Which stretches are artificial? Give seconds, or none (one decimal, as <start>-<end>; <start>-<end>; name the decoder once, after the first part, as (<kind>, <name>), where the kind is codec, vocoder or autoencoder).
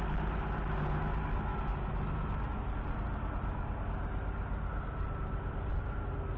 1.5-2.5 (autoencoder, DAC-VAE)